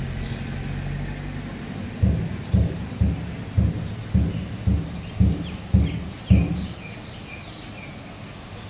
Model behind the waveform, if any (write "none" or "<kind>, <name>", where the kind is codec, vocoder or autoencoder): none